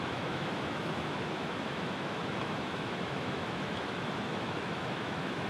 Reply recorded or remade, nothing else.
remade